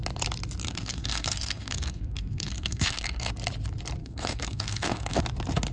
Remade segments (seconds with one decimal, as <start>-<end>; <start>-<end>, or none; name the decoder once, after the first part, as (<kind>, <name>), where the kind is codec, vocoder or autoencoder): 0.6-3.3 (codec, SNAC); 4.0-5.2